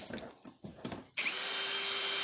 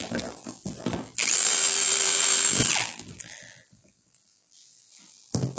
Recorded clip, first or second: first